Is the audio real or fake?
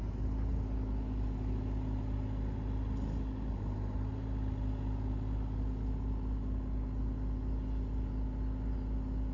real